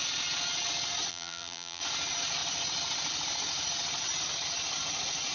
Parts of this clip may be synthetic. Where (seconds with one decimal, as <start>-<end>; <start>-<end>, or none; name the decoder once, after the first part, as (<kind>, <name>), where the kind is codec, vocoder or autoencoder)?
1.1-1.8 (vocoder, BigVGAN v2)